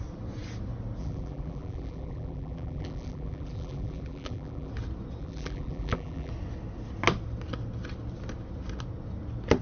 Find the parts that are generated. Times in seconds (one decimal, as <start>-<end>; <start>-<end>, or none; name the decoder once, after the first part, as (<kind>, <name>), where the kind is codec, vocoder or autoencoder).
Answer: 1.0-4.7 (vocoder, BigVGAN v2); 5.2-6.3